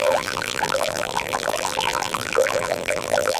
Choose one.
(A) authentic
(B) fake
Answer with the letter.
B